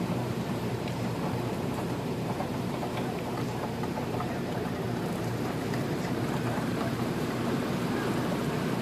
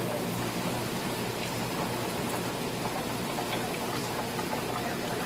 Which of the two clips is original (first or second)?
second